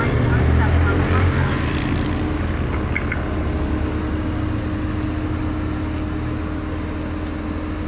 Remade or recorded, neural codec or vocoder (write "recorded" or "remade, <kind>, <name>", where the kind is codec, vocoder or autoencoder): recorded